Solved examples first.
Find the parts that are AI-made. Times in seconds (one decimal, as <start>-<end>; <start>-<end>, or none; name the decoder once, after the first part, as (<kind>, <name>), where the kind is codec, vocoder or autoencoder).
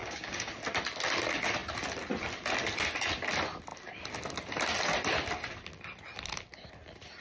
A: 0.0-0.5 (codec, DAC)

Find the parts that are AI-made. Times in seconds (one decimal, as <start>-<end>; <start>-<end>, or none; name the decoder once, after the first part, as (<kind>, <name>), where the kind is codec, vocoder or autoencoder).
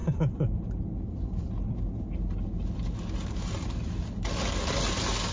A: none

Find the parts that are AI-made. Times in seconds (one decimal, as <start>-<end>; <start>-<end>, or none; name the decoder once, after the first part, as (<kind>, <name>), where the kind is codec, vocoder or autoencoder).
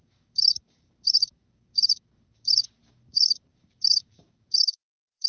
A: 0.0-5.3 (codec, DAC)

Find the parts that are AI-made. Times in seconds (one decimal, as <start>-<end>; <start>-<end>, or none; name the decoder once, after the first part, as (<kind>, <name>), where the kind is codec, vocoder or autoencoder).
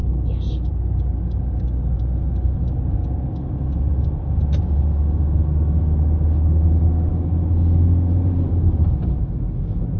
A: 0.0-0.7 (codec, DAC)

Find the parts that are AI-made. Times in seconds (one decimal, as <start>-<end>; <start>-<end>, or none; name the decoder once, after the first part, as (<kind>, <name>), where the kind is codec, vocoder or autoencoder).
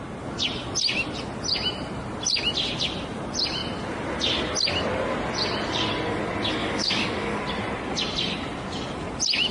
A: 6.6-7.4 (codec, DAC)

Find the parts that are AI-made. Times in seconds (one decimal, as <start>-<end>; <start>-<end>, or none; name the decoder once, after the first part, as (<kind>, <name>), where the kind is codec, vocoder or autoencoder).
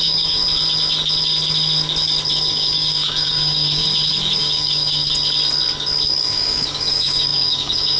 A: 0.0-0.4 (codec, DAC); 2.5-3.8; 4.4-5.0; 6.1-8.0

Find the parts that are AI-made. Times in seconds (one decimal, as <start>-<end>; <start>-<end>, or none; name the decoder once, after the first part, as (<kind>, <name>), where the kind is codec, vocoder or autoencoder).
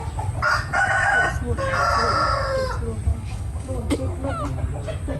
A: 3.1-4.3 (codec, DAC)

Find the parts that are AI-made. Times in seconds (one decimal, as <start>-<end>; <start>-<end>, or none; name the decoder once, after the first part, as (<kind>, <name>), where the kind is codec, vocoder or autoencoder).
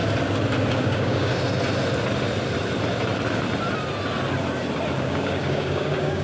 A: 0.7-1.3 (codec, DAC); 5.0-6.2